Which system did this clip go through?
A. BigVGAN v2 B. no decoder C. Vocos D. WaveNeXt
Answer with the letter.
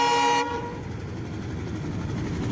B